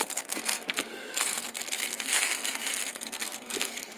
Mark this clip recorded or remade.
remade